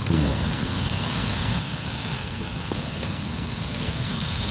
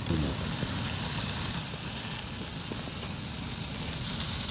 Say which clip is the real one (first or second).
second